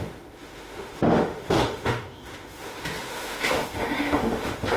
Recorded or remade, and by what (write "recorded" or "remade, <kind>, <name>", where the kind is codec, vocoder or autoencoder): remade, autoencoder, DAC-VAE